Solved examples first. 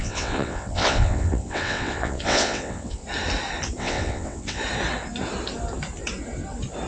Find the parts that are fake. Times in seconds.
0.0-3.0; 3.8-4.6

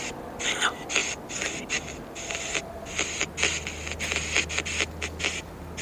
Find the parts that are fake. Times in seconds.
none

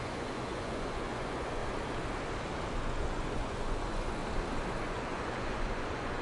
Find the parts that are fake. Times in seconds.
0.0-1.6; 2.7-4.2; 4.8-6.2